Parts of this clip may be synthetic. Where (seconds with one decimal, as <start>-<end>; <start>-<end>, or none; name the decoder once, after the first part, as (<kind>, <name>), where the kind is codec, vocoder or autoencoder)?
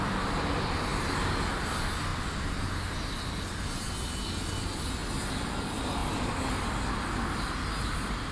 0.0-0.9 (vocoder, BigVGAN v2); 1.5-5.0; 5.6-6.0; 7.1-8.3